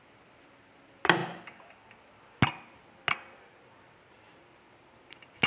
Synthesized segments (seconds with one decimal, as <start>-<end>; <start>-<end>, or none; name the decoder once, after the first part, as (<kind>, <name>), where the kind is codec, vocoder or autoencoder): none